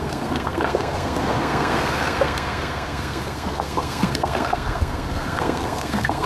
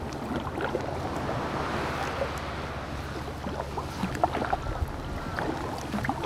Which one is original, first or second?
second